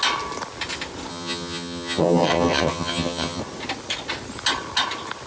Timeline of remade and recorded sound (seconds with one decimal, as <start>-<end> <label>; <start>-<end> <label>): 0.0-1.1 recorded; 1.1-3.4 remade; 3.4-5.3 recorded